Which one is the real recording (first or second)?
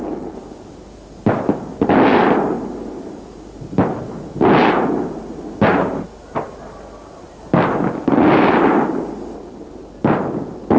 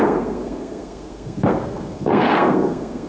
first